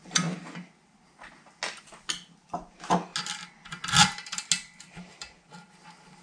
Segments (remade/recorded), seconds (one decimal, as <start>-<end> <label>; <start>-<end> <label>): 0.0-6.2 recorded